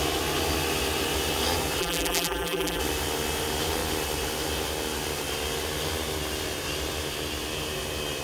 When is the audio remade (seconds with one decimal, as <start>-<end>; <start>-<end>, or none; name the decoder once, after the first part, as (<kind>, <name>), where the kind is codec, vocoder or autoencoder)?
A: 1.8-2.8 (vocoder, BigVGAN v2)